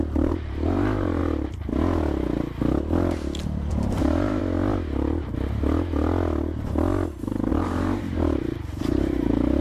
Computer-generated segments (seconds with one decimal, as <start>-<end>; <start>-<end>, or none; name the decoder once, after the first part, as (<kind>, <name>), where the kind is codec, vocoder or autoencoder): 0.0-1.2 (vocoder, BigVGAN v2); 3.7-4.4; 7.5-9.6